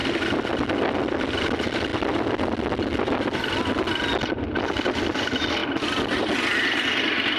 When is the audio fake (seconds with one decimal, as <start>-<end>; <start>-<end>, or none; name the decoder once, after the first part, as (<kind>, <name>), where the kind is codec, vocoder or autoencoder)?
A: none